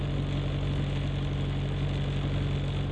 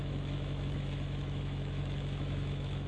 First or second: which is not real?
second